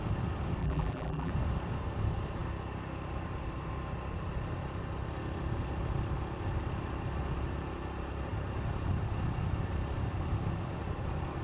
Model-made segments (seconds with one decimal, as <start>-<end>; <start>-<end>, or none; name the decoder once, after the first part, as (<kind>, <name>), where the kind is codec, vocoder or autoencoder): 0.6-1.3 (vocoder, BigVGAN v2)